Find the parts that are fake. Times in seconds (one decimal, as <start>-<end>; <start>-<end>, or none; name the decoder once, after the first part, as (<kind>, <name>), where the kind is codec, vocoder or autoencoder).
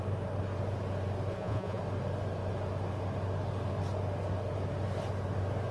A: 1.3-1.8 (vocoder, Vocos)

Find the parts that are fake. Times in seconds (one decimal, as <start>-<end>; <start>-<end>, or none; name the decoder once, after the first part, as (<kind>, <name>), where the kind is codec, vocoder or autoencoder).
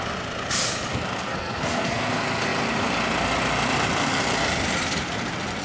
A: 0.9-2.1 (codec, SNAC)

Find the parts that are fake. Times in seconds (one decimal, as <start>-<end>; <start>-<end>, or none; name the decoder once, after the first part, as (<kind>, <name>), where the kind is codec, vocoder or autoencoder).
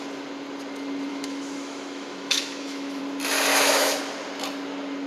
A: 1.1-3.0 (autoencoder, DAC-VAE); 3.5-4.0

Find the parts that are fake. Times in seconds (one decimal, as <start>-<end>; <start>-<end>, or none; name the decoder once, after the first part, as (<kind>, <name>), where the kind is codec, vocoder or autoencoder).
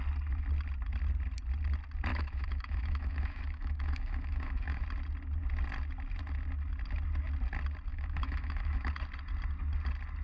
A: 2.1-4.8 (autoencoder, DAC-VAE); 7.9-8.9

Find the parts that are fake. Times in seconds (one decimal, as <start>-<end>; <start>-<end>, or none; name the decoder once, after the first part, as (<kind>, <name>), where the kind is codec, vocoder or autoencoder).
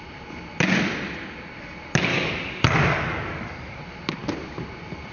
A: 2.1-3.8 (codec, DAC)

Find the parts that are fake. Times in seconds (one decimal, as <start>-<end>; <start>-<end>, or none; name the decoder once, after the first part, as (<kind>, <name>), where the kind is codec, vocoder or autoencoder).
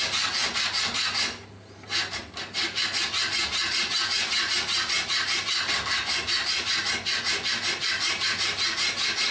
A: none